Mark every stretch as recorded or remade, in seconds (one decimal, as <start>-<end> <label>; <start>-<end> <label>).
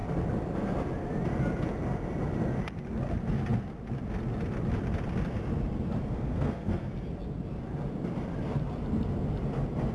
0.0-6.0 recorded; 6.0-6.9 remade; 6.9-9.9 recorded